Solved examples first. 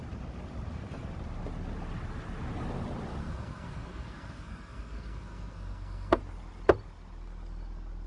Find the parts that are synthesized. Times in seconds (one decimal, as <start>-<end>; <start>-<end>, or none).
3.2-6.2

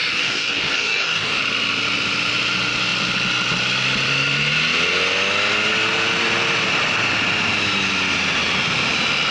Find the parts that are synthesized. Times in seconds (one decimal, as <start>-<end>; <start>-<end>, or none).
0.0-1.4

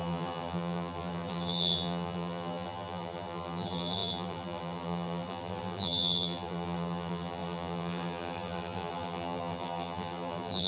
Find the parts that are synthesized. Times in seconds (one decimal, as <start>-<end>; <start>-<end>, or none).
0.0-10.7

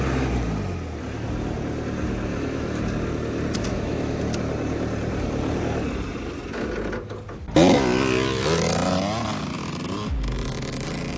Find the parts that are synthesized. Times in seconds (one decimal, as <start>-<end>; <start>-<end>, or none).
2.3-2.8; 3.7-4.2

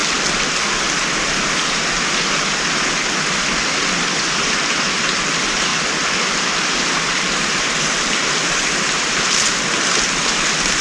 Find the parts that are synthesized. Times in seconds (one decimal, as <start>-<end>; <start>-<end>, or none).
5.7-10.8

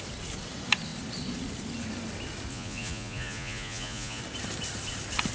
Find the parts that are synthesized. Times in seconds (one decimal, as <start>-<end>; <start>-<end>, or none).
2.5-4.2